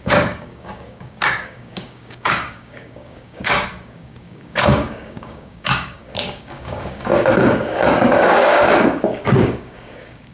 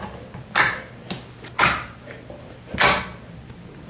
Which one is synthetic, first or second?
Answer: first